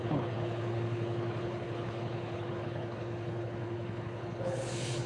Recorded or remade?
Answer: remade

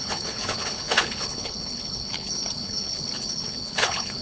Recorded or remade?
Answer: remade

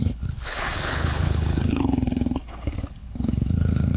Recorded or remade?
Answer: remade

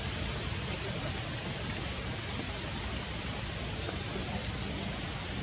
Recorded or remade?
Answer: recorded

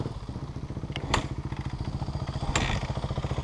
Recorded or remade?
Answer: recorded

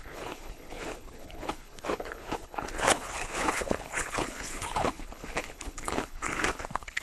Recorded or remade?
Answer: remade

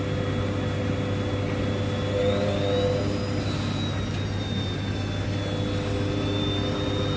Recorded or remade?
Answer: recorded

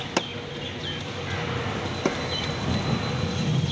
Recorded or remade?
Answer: recorded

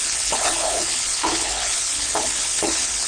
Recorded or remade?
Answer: remade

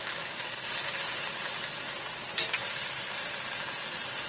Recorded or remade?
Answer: recorded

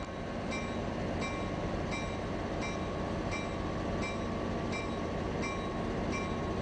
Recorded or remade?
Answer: recorded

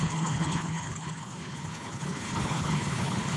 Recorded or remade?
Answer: remade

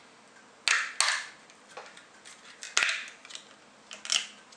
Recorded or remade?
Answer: recorded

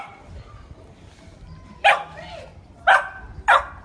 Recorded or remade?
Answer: recorded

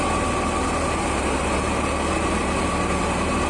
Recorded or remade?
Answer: recorded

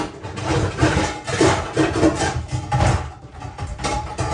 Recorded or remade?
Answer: recorded